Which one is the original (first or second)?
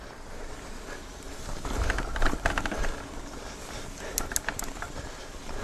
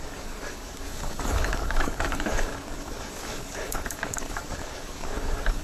first